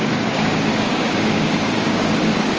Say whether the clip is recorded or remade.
remade